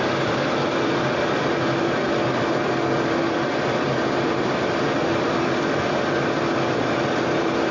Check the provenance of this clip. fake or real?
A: fake